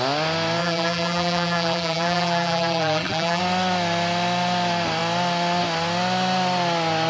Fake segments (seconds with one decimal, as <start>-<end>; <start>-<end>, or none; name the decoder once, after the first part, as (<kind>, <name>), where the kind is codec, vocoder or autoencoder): 0.6-3.4 (vocoder, BigVGAN v2)